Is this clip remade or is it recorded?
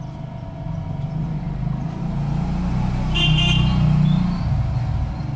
recorded